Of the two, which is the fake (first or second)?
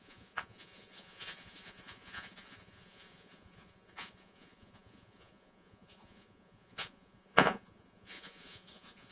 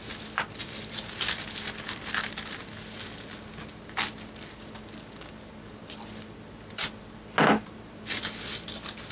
first